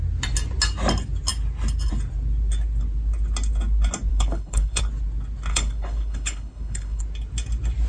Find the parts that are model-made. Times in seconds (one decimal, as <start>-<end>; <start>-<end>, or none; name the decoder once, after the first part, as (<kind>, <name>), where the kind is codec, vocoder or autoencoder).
4.1-4.8 (codec, HILCodec); 5.5-7.0